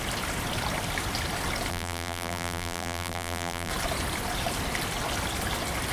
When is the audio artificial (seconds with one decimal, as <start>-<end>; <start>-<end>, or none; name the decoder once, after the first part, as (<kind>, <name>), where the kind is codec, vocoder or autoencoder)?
1.7-3.7 (vocoder, BigVGAN v2)